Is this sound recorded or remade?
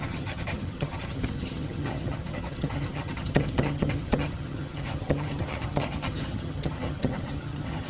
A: remade